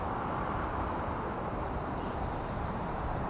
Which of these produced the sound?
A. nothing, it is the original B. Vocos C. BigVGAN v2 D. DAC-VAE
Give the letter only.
C